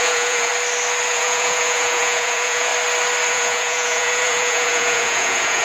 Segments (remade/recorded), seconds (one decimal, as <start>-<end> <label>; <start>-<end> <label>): 0.0-0.5 remade; 0.5-1.1 recorded; 1.1-2.7 remade; 2.7-3.3 recorded; 3.3-5.6 remade